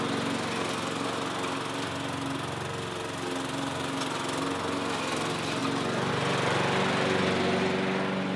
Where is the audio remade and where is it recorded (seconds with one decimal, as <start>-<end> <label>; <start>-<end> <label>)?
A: 0.0-8.4 recorded